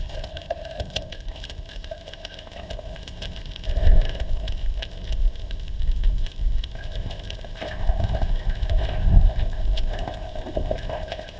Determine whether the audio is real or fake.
fake